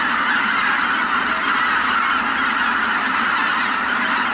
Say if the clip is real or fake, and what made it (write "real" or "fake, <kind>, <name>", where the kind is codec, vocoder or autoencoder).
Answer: real